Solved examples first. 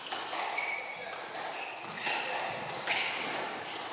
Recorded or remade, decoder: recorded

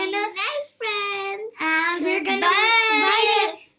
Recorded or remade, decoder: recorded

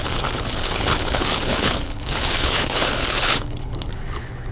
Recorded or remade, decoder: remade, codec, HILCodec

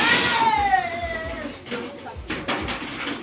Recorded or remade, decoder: recorded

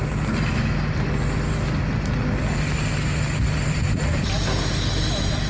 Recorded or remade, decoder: recorded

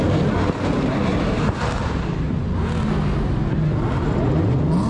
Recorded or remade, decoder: recorded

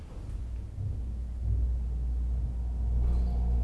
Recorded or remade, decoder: recorded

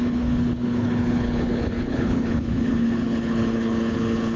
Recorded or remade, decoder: remade, codec, HILCodec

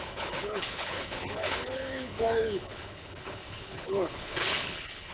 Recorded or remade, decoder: remade, codec, HILCodec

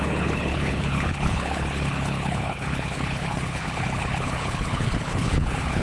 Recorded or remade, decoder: remade, codec, HILCodec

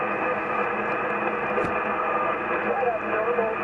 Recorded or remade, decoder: recorded